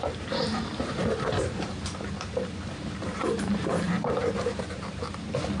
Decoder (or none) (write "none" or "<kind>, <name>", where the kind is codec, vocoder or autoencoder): vocoder, BigVGAN v2